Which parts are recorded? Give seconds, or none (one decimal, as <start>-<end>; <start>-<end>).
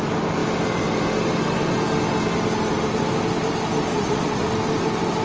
0.0-3.9; 4.5-5.2